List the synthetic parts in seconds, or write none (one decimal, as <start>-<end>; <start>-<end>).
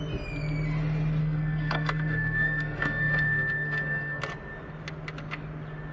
1.2-4.2